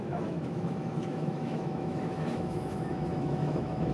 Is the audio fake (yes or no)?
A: yes